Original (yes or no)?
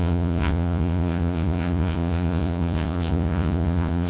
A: no